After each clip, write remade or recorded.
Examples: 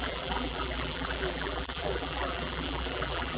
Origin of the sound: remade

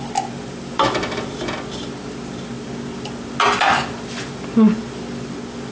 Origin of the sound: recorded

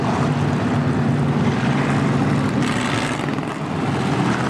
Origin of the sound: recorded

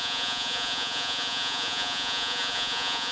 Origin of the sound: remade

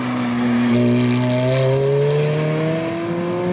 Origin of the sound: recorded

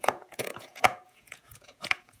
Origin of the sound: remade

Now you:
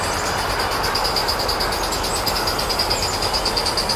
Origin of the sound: recorded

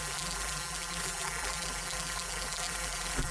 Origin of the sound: remade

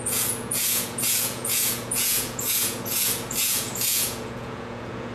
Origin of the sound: remade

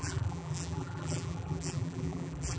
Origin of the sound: remade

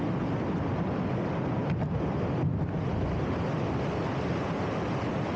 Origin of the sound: recorded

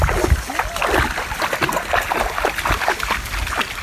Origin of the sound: recorded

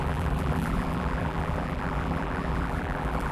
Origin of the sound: remade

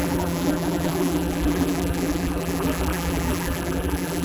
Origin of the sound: remade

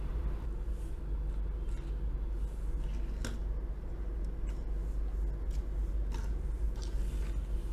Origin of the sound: recorded